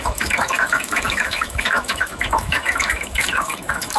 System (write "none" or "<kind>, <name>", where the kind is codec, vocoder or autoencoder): autoencoder, DAC-VAE